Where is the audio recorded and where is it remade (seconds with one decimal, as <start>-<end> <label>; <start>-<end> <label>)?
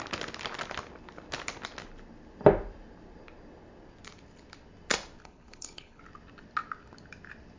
0.0-5.2 recorded; 5.2-6.0 remade; 6.0-7.6 recorded